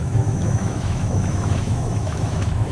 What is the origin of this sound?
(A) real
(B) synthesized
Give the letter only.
B